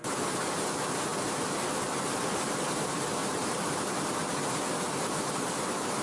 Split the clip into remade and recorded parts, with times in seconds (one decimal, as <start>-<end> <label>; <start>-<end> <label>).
0.0-6.0 recorded